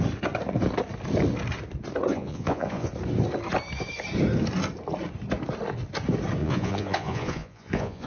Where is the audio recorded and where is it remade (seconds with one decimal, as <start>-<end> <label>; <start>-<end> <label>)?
0.0-2.1 recorded; 2.1-2.9 remade; 2.9-6.4 recorded; 6.4-8.1 remade